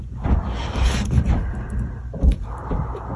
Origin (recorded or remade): recorded